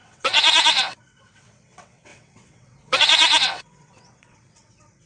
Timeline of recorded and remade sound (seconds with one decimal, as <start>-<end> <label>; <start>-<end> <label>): 0.0-5.1 remade